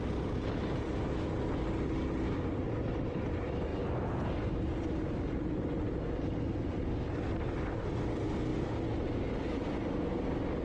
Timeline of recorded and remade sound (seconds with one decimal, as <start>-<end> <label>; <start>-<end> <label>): 0.0-10.6 recorded